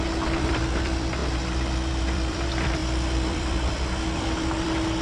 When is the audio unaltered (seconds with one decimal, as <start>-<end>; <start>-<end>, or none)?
1.2-1.9